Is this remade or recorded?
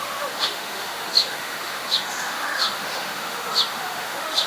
remade